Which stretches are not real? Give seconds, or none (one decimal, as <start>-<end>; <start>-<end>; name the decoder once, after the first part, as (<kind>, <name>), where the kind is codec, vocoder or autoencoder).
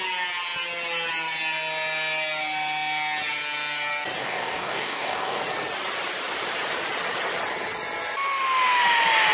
4.2-5.4 (codec, DAC)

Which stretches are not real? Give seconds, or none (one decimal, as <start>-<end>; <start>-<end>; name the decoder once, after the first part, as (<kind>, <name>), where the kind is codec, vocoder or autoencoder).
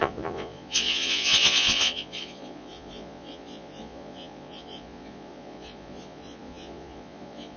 0.0-7.6 (vocoder, Vocos)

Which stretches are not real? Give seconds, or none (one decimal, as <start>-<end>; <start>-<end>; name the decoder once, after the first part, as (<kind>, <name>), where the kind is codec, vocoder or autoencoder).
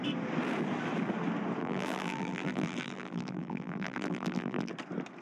1.6-4.7 (vocoder, BigVGAN v2)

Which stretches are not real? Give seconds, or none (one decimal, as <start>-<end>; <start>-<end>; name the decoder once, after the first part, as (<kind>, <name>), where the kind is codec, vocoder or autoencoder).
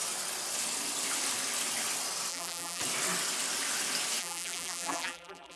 2.3-2.8 (vocoder, BigVGAN v2); 4.2-5.6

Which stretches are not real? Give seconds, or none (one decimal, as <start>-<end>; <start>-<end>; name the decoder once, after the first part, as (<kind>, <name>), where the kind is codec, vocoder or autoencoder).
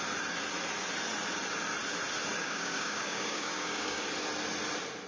2.4-4.0 (codec, DAC)